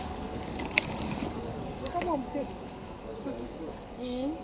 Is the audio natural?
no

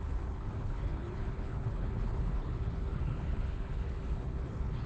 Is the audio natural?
no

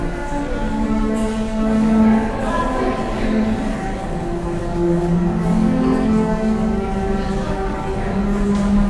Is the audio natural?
no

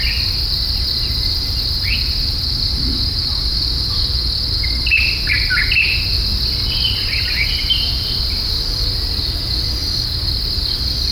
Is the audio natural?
yes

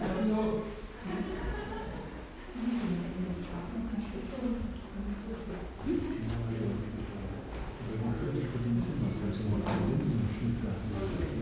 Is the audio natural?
yes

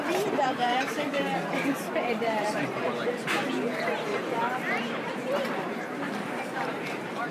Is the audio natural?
no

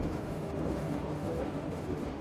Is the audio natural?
no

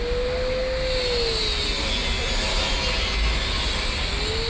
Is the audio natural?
yes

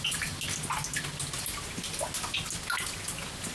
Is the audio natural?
yes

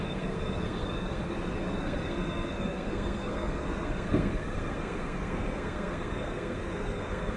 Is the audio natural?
no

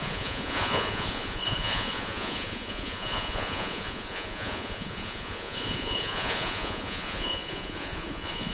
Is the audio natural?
no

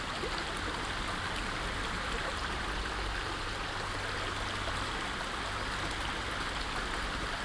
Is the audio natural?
yes